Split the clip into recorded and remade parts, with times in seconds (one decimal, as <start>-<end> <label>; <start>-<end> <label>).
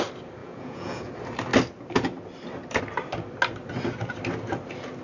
0.0-0.4 recorded; 0.4-1.1 remade; 1.1-5.0 recorded